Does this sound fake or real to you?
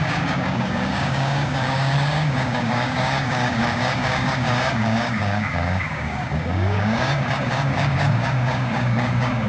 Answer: fake